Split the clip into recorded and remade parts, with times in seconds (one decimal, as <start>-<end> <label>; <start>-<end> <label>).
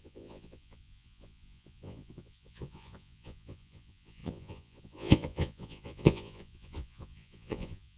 0.0-8.0 remade